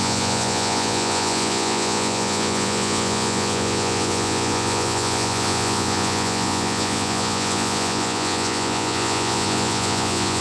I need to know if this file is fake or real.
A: fake